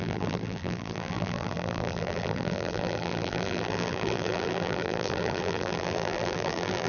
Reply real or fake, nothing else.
fake